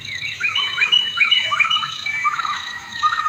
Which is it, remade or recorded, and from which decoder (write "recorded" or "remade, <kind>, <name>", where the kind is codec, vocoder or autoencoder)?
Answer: remade, autoencoder, DAC-VAE